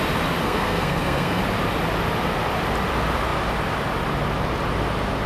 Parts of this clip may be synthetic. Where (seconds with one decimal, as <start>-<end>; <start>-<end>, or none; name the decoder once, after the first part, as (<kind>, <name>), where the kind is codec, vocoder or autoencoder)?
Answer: 0.4-1.4 (codec, SNAC)